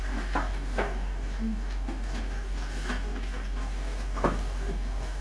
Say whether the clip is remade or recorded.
remade